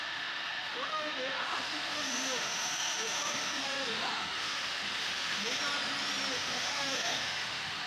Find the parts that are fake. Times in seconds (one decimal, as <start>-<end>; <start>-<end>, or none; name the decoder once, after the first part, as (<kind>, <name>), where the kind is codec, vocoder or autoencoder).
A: 0.0-5.6 (autoencoder, DAC-VAE); 6.3-7.9